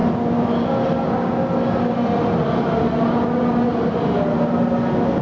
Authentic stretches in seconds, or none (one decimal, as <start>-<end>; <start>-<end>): 0.0-5.2